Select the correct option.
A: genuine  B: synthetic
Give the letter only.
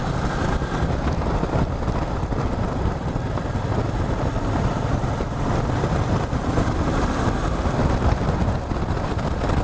A